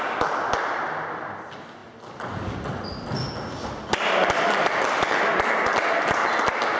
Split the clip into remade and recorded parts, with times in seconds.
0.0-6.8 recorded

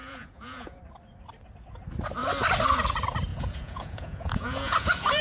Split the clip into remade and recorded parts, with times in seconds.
0.0-0.8 remade; 0.8-3.3 recorded; 3.3-5.2 remade

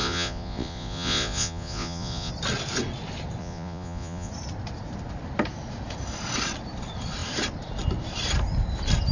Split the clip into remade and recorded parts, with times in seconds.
0.0-2.3 remade; 2.3-3.4 recorded; 3.4-4.3 remade; 4.3-9.1 recorded

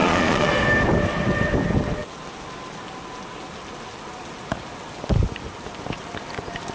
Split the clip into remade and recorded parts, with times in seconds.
0.0-0.5 remade; 0.5-6.7 recorded

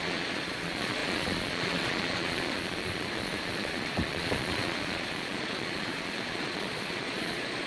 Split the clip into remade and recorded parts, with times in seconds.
0.0-7.7 remade